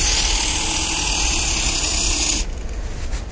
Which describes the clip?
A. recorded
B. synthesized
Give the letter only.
A